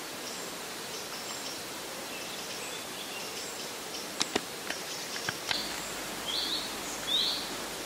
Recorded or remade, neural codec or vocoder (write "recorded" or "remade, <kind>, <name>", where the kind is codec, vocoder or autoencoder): remade, vocoder, BigVGAN v2